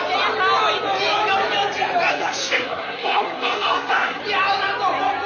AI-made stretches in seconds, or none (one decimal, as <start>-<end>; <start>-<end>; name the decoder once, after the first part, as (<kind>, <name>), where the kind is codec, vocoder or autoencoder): 2.1-4.2 (codec, SNAC)